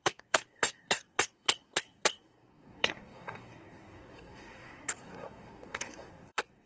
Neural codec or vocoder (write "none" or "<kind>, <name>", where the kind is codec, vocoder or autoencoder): codec, SNAC